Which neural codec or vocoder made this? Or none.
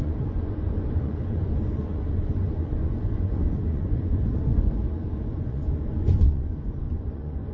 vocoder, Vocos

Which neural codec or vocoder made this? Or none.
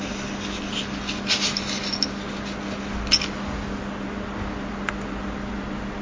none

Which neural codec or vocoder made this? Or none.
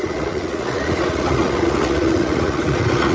vocoder, Vocos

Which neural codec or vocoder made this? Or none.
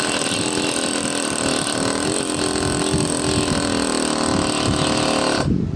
none